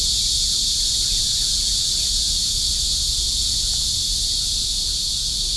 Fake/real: fake